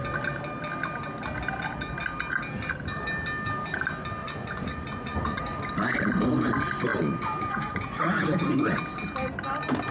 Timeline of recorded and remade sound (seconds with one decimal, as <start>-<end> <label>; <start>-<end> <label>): 0.0-4.2 recorded; 4.2-5.6 remade; 5.6-6.9 recorded; 6.9-8.8 remade; 8.8-9.9 recorded